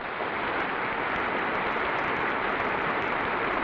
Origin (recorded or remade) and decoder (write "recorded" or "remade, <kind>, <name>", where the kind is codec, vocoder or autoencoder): recorded